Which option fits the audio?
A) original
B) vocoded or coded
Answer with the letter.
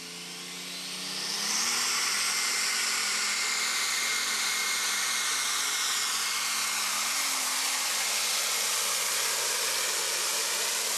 A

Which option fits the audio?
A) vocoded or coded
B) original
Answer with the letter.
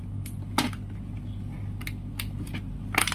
B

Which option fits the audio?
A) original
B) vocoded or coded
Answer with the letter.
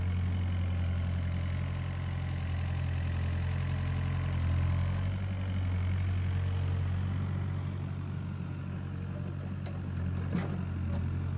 A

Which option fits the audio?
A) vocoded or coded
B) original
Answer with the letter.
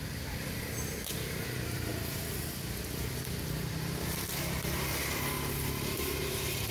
A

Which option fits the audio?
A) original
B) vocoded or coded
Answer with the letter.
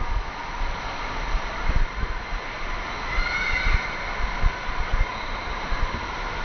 A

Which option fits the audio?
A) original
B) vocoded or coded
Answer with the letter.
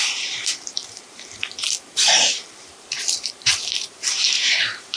B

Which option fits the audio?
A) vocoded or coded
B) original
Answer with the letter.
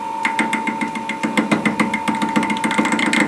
B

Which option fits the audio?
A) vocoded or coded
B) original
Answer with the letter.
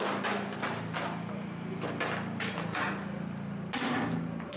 B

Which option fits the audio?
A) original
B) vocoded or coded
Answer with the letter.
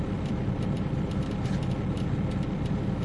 B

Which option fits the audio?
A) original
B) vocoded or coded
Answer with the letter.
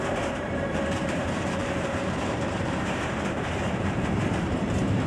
B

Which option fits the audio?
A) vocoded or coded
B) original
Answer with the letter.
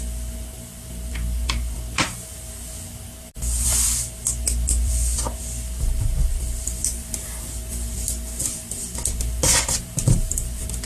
A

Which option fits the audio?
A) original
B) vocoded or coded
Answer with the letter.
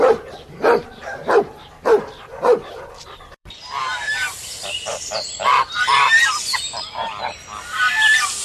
B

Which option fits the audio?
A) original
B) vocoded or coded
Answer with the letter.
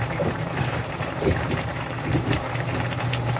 B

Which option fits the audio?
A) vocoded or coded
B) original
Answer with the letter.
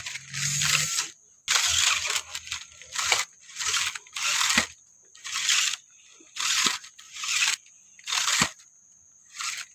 B